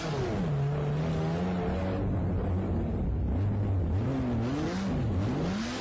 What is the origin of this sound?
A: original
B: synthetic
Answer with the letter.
A